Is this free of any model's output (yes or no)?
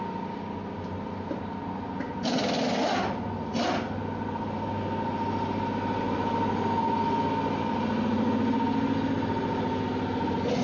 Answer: yes